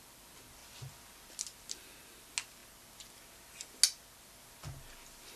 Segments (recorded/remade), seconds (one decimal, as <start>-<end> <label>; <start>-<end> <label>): 0.0-5.4 recorded